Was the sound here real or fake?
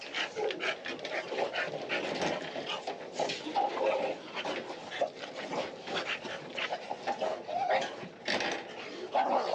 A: real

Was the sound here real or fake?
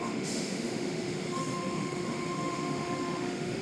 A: fake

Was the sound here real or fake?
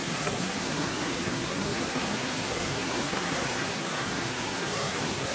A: fake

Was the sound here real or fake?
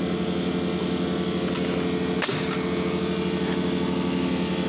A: real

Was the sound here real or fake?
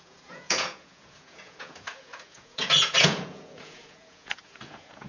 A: fake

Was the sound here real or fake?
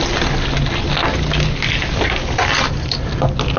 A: real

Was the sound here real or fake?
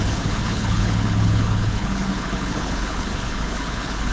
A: fake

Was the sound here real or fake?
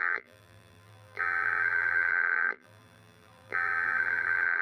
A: fake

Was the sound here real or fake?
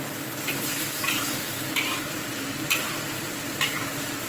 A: fake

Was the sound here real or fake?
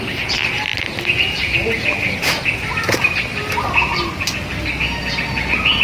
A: real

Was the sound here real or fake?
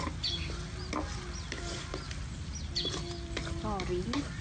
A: real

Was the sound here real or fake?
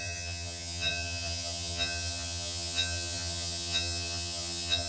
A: fake